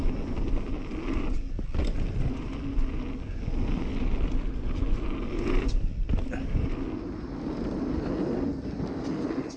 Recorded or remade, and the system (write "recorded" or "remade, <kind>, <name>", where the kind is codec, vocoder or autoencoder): recorded